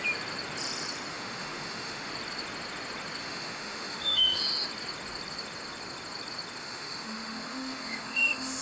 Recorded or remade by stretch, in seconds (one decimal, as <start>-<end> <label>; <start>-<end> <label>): 0.0-1.1 recorded; 1.1-2.1 remade; 2.1-3.2 recorded; 3.2-4.4 remade; 4.4-6.6 recorded; 6.6-8.6 remade